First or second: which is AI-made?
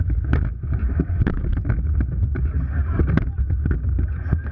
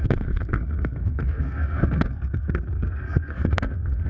second